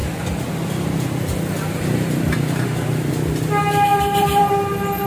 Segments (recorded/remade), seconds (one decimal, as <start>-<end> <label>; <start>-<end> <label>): 0.0-3.1 remade; 3.1-3.9 recorded; 3.9-4.5 remade; 4.5-5.1 recorded